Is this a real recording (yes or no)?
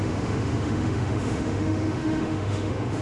no